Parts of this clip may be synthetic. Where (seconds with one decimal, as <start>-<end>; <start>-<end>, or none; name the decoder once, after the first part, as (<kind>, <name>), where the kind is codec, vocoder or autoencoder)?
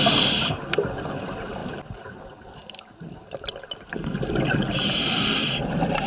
none